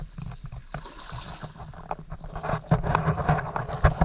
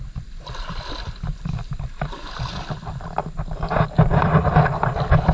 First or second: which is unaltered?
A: first